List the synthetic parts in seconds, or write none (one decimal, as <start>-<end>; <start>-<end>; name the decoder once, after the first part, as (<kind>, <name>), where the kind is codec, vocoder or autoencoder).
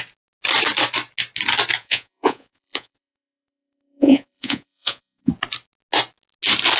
1.8-5.3 (vocoder, Vocos)